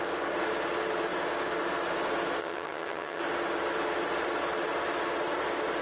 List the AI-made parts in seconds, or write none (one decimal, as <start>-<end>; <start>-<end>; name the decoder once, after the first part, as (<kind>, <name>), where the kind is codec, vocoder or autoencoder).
2.4-3.2 (vocoder, HiFi-GAN)